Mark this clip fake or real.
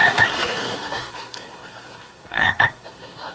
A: fake